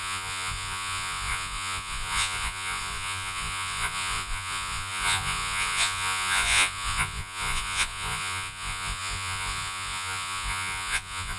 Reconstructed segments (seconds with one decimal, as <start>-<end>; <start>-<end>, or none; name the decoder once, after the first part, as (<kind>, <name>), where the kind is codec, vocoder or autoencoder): 0.0-11.4 (vocoder, Vocos)